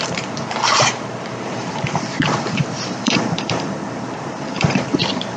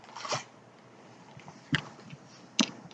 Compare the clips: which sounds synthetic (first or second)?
first